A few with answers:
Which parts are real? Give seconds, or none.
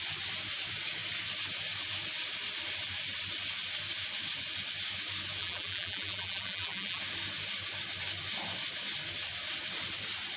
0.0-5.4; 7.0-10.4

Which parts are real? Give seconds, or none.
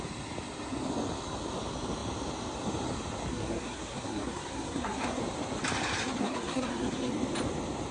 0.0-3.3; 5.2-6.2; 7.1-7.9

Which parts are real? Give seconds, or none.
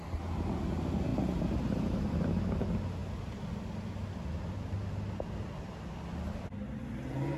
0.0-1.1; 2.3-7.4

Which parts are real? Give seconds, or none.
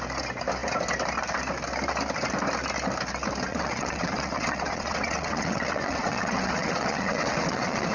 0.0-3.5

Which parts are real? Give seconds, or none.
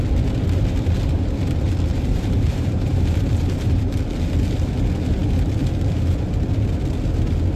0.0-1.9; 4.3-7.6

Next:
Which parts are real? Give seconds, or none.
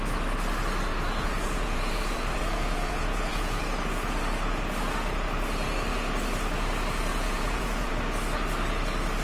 0.0-0.9; 3.6-7.1; 7.9-9.2